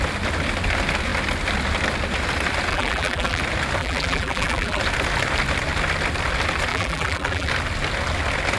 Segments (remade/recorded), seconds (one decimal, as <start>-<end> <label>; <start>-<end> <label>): 0.0-2.7 recorded; 2.7-3.4 remade; 3.4-3.8 recorded; 3.8-4.8 remade; 4.8-6.7 recorded; 6.7-7.5 remade; 7.5-8.6 recorded